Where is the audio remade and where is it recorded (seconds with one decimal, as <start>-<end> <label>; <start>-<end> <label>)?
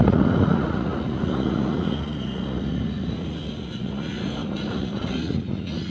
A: 0.0-5.9 remade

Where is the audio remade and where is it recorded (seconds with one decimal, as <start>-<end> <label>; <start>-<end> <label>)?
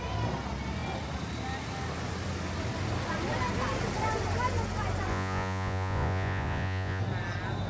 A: 0.0-5.1 recorded; 5.1-7.0 remade; 7.0-7.7 recorded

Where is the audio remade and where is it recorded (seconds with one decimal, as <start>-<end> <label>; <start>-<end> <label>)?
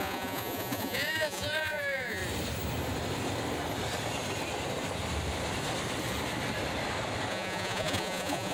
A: 0.0-2.2 remade; 2.2-7.3 recorded; 7.3-8.5 remade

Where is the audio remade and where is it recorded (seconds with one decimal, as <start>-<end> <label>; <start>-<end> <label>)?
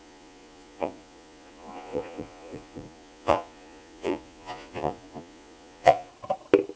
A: 0.0-6.1 remade; 6.1-6.8 recorded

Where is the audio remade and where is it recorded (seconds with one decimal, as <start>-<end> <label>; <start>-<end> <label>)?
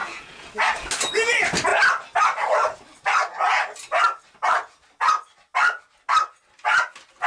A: 0.0-0.5 remade; 0.5-7.3 recorded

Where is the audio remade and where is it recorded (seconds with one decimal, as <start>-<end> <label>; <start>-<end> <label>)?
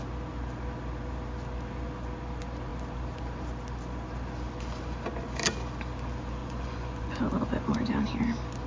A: 0.0-6.4 recorded; 6.4-8.1 remade; 8.1-8.7 recorded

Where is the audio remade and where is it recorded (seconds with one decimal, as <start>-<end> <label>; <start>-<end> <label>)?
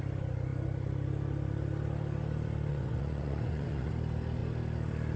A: 0.0-2.7 recorded; 2.7-3.9 remade; 3.9-5.2 recorded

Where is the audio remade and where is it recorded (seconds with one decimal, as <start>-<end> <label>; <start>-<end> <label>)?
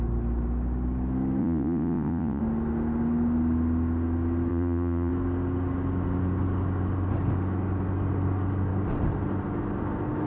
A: 0.0-1.4 recorded; 1.4-2.4 remade; 2.4-4.5 recorded; 4.5-5.1 remade; 5.1-10.3 recorded